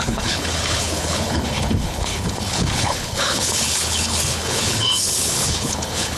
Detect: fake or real fake